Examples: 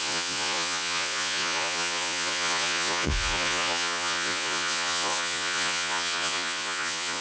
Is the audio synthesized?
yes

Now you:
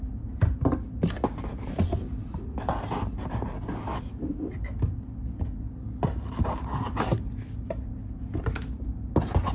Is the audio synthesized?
no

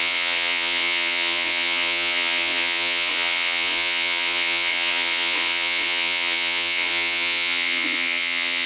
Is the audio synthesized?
yes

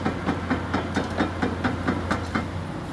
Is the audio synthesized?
no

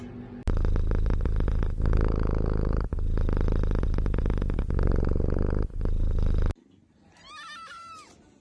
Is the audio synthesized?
no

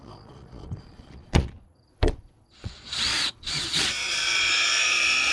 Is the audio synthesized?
yes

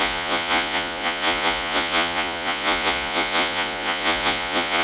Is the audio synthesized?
yes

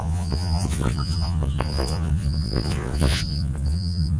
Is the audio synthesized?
yes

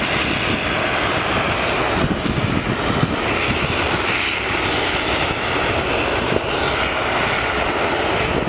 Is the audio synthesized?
no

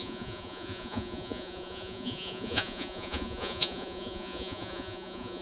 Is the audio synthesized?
yes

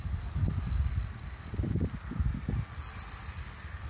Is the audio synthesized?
no